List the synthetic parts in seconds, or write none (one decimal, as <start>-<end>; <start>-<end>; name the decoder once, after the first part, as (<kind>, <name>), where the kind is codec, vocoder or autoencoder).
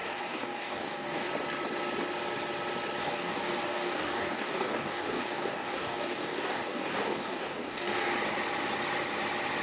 0.0-1.3 (codec, DAC); 3.0-8.1